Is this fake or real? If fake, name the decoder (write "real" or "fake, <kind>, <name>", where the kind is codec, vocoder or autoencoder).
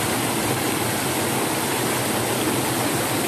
real